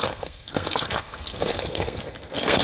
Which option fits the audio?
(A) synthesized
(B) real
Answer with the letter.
A